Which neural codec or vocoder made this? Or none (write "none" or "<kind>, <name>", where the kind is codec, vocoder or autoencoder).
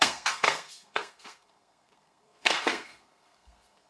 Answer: codec, SNAC